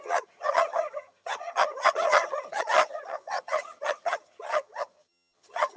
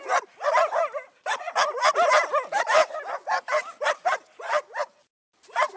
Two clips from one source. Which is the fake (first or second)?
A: first